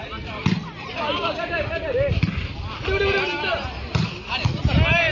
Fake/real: real